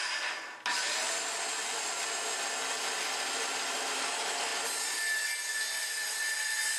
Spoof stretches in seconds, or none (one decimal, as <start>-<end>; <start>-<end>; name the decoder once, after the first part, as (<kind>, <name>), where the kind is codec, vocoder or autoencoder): none